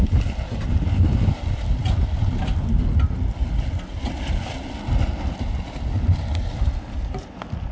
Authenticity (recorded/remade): recorded